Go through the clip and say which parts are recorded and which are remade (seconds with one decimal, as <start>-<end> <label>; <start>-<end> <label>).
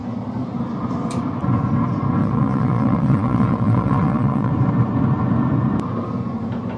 0.0-2.2 recorded; 2.2-4.5 remade; 4.5-6.8 recorded